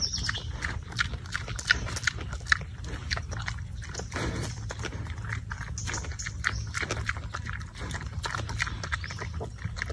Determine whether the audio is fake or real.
real